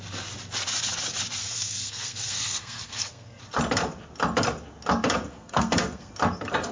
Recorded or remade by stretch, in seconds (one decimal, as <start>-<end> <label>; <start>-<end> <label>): 0.0-1.4 recorded; 1.4-3.4 remade; 3.4-5.3 recorded; 5.3-6.1 remade; 6.1-6.7 recorded